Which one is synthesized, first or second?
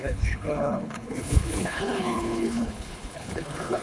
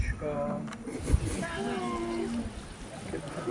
first